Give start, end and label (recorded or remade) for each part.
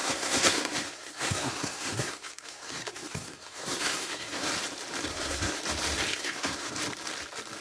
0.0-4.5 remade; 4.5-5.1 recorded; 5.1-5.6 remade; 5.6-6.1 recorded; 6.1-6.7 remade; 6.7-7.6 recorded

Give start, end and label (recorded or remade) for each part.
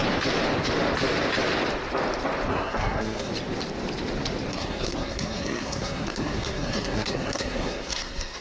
0.0-2.5 recorded; 2.5-3.3 remade; 3.3-4.5 recorded; 4.5-8.4 remade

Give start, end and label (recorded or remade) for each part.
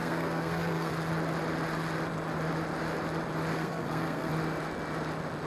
0.0-0.9 remade; 0.9-3.5 recorded; 3.5-4.3 remade; 4.3-5.5 recorded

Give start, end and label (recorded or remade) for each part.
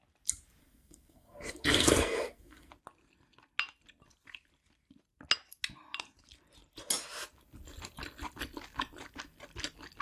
0.0-0.6 recorded; 0.6-2.7 remade; 2.7-10.0 recorded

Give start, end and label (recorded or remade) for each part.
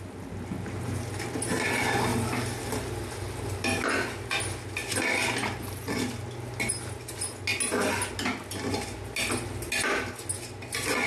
0.0-11.1 recorded